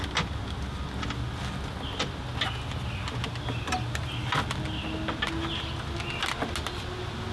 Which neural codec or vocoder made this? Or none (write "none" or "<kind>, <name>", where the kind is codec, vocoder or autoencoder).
none